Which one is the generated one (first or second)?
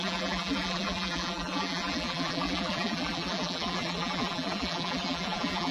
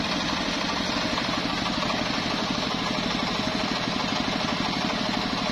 first